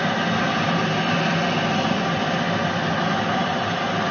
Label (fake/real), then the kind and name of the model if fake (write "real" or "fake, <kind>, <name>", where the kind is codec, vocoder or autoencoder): real